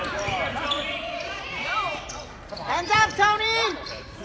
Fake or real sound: fake